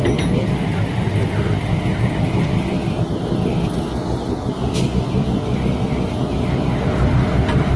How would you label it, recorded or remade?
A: recorded